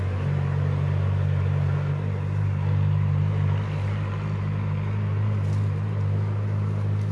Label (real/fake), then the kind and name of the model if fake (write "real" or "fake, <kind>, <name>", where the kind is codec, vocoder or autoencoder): real